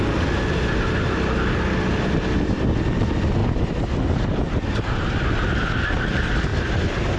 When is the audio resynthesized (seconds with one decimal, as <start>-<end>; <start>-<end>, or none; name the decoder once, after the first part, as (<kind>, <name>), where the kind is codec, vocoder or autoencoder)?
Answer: 3.4-5.2 (vocoder, BigVGAN v2)